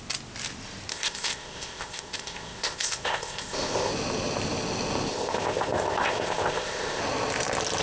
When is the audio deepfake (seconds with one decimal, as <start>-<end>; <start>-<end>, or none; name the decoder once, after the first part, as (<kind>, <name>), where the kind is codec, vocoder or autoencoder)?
0.9-3.9 (codec, ZipCodec); 5.1-7.0